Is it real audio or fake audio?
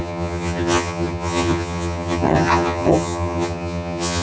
fake